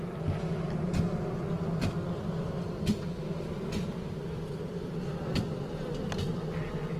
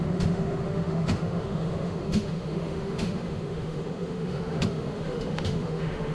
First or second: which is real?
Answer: first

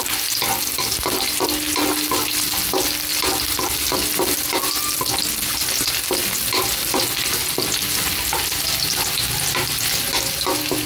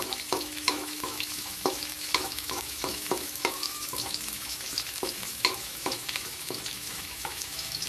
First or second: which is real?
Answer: first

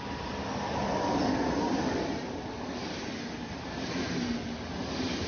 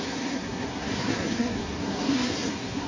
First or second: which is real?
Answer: first